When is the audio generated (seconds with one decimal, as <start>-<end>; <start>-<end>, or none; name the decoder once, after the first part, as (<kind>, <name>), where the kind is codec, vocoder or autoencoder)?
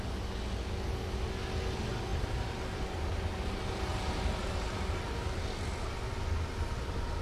2.1-6.0 (vocoder, BigVGAN v2)